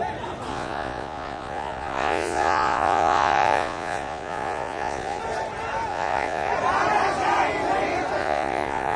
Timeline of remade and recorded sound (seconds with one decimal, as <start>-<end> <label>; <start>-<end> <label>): 0.0-0.5 recorded; 0.5-5.2 remade; 5.2-5.9 recorded; 5.9-6.5 remade; 6.5-8.2 recorded; 8.2-9.0 remade